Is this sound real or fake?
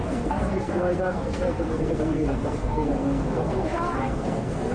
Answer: fake